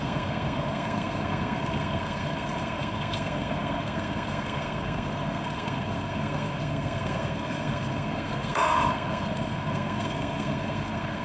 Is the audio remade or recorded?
remade